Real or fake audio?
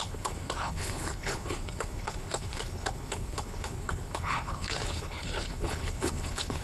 fake